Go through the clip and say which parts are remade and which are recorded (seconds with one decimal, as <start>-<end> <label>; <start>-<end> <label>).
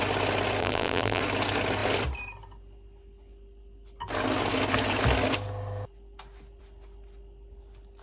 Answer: 0.0-0.6 recorded; 0.6-1.2 remade; 1.2-8.0 recorded